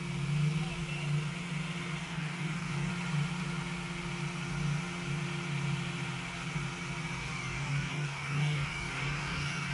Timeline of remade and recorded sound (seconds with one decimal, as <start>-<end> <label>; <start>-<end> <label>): 0.0-2.0 recorded; 2.0-2.9 remade; 2.9-7.2 recorded; 7.2-9.7 remade